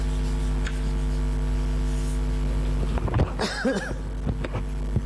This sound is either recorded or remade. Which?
recorded